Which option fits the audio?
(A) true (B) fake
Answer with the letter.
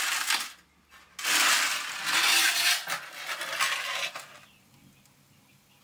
A